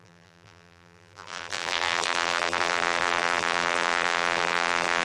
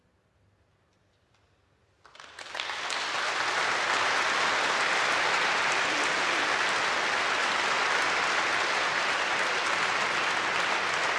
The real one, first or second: second